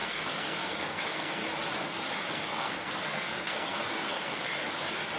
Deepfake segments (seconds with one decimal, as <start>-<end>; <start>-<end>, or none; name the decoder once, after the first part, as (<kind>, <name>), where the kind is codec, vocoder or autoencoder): 0.0-1.4 (codec, SNAC); 2.3-4.5